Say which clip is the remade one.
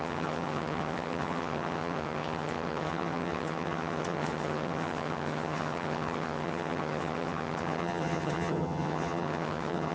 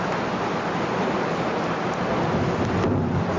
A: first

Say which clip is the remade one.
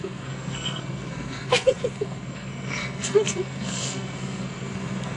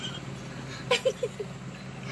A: first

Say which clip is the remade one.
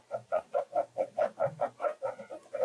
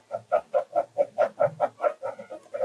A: first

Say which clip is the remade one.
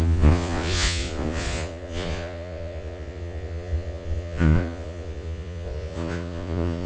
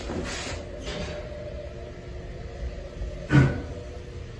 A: first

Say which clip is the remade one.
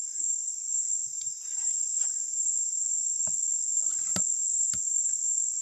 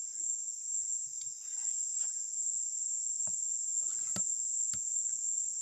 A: second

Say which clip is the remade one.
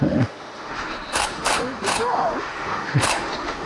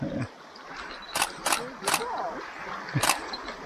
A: first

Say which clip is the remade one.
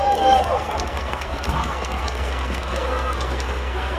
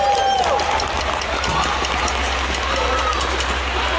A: first